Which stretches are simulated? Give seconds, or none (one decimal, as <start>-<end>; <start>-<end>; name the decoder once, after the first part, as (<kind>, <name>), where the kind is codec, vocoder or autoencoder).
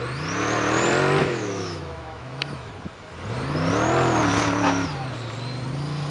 1.2-2.7 (autoencoder, DAC-VAE)